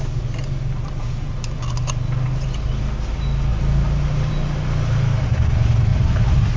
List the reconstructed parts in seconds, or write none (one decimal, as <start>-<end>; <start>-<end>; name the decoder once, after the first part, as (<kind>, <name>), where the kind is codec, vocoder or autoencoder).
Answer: 5.9-6.6 (vocoder, BigVGAN v2)

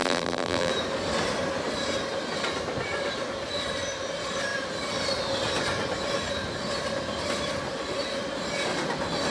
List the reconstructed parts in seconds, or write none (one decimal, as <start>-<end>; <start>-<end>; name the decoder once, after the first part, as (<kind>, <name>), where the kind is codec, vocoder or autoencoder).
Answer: 0.0-0.7 (vocoder, BigVGAN v2)

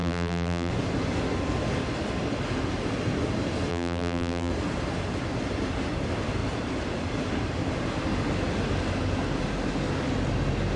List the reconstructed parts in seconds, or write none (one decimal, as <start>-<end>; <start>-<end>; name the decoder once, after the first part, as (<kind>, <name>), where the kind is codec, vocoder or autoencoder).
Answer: 0.0-0.7 (vocoder, BigVGAN v2); 3.7-4.5